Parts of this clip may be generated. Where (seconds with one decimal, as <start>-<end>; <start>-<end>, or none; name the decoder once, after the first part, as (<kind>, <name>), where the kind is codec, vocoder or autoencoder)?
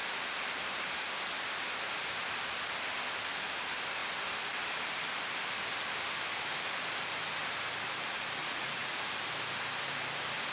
8.4-9.1 (vocoder, Vocos)